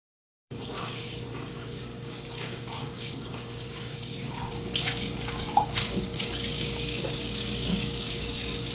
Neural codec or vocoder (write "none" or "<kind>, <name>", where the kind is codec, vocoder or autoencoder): codec, DAC